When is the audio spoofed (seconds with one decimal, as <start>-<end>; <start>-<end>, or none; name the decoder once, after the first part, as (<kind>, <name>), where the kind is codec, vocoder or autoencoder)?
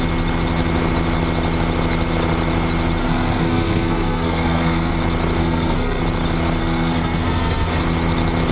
3.0-4.9 (codec, SNAC); 5.4-6.0; 6.6-7.8